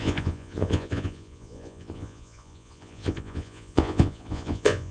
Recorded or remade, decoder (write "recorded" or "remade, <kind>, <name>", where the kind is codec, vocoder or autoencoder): remade, vocoder, Vocos